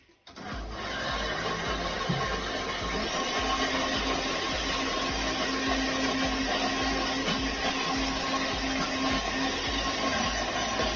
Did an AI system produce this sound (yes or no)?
no